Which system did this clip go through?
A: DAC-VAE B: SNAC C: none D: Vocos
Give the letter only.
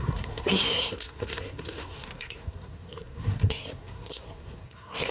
B